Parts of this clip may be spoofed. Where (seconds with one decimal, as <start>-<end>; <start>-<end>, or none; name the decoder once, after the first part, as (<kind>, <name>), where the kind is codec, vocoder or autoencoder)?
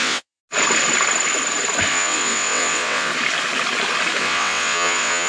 0.0-0.4 (vocoder, WaveNeXt); 1.9-3.1; 4.2-5.3